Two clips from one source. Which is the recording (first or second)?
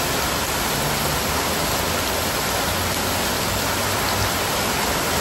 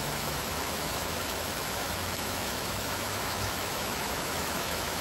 first